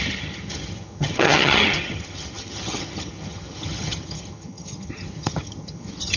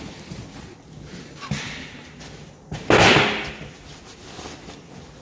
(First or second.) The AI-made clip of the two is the first